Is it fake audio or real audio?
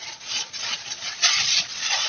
fake